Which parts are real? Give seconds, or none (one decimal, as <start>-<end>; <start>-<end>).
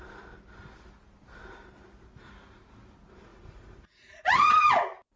0.0-3.3; 4.7-5.2